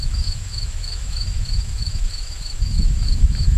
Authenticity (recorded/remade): remade